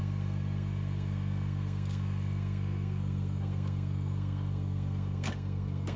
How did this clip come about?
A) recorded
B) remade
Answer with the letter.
B